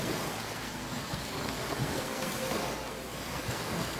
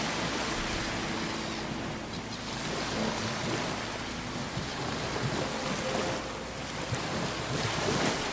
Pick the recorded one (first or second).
second